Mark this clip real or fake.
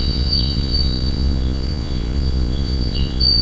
fake